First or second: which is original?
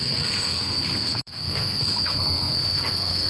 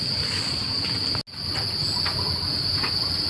second